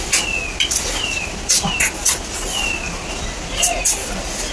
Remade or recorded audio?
recorded